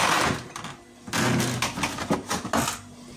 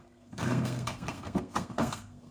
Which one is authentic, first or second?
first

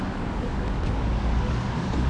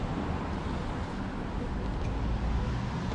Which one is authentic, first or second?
second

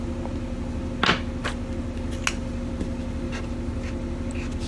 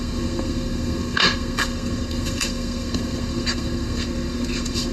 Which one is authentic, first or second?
first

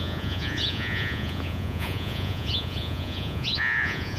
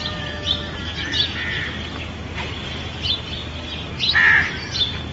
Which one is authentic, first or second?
second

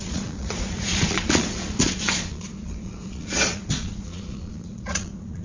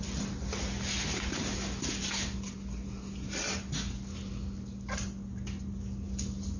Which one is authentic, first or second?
second